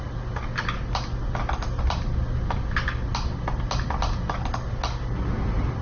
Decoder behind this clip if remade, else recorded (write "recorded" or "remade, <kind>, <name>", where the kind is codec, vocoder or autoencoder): recorded